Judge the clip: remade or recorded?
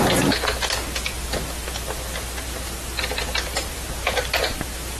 recorded